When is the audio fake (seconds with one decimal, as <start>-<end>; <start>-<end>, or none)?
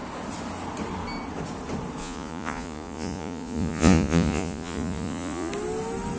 2.0-5.5